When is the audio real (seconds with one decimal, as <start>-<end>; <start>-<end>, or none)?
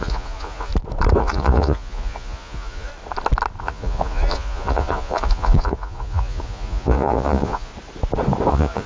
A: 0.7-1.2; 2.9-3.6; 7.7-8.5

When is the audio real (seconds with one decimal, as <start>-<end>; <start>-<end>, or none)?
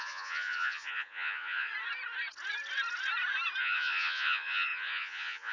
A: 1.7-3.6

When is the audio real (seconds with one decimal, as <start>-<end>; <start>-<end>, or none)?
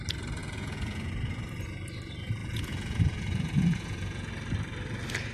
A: 0.0-0.4; 1.1-2.4; 4.3-5.3